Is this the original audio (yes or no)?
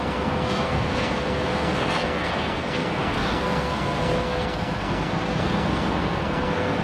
no